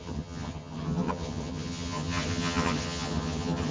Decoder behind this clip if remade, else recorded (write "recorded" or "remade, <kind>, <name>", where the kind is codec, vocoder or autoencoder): remade, vocoder, HiFi-GAN